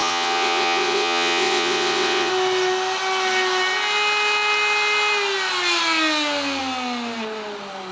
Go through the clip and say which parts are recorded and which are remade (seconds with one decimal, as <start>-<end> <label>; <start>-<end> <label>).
0.0-2.3 remade; 2.3-7.9 recorded